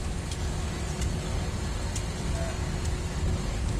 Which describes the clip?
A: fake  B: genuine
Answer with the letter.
B